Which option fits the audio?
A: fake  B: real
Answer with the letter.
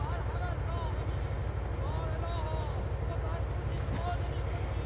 B